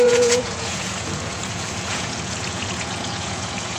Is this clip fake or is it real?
fake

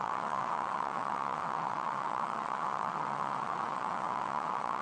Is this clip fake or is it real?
fake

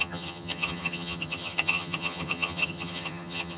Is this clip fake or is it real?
fake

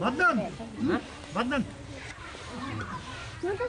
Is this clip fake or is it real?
real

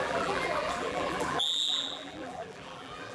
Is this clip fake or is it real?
fake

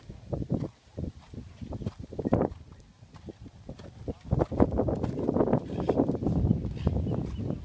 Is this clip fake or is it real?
real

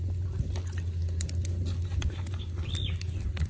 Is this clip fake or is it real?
real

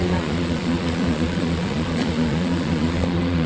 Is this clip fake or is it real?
fake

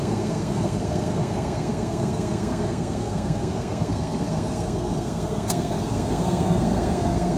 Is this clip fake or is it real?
fake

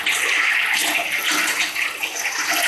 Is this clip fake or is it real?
real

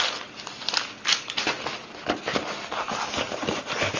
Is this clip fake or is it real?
real